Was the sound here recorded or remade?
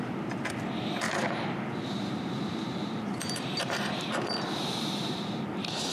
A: remade